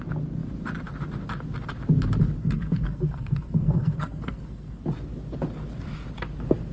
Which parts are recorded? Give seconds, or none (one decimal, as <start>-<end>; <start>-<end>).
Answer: 0.0-2.4; 4.8-6.7